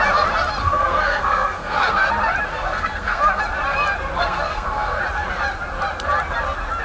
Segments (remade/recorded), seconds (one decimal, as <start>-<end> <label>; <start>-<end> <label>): 0.0-0.6 recorded; 0.6-2.1 remade; 2.1-2.5 recorded; 2.5-3.4 remade; 3.4-4.2 recorded; 4.2-5.0 remade; 5.0-6.8 recorded